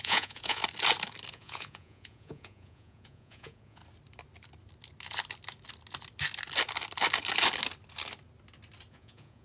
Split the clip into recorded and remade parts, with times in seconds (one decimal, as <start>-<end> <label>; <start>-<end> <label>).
0.0-0.6 remade; 0.6-1.3 recorded; 1.3-3.8 remade; 3.8-8.9 recorded; 8.9-9.4 remade